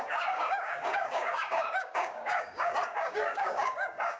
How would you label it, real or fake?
fake